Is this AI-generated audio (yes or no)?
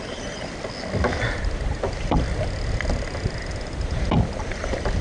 no